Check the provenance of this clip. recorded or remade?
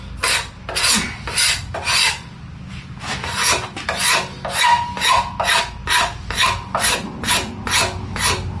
recorded